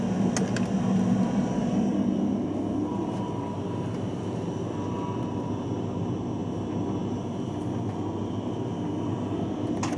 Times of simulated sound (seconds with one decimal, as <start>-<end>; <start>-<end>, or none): none